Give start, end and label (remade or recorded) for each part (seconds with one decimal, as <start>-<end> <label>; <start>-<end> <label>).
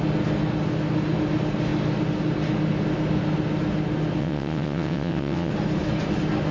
0.0-4.2 recorded; 4.2-5.5 remade; 5.5-6.5 recorded